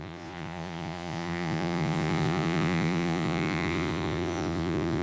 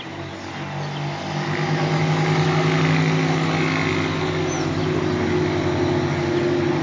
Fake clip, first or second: first